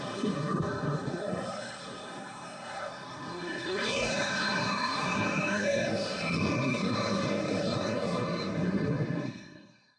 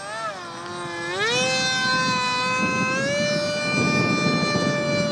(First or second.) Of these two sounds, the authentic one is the second